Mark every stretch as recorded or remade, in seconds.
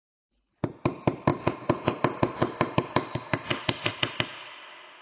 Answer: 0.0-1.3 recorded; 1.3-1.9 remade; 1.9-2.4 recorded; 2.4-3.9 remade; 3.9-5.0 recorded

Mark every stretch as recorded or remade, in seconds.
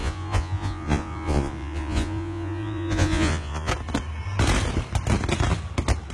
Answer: 0.0-3.7 remade; 3.7-6.1 recorded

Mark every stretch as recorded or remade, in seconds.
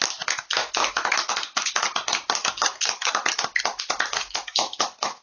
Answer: 0.0-0.6 recorded; 0.6-1.7 remade; 1.7-2.4 recorded; 2.4-3.3 remade; 3.3-3.7 recorded; 3.7-5.2 remade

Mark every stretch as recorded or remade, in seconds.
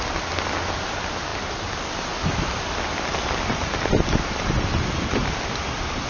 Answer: 0.0-6.1 recorded